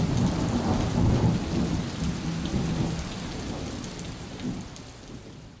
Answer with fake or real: real